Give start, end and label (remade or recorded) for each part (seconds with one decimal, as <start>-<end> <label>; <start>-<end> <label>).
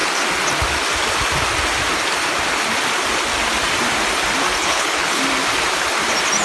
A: 0.0-4.6 recorded; 4.6-5.2 remade; 5.2-6.4 recorded